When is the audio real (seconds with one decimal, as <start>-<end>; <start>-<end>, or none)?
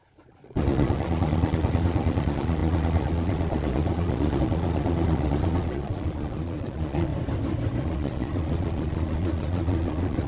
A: 7.1-7.8